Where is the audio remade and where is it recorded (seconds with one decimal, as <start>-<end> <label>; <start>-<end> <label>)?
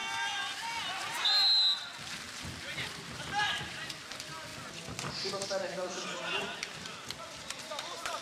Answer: 0.0-3.2 recorded; 3.2-4.5 remade; 4.5-5.1 recorded; 5.1-8.2 remade